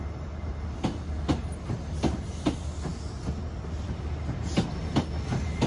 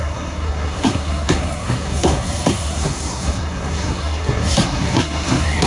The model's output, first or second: second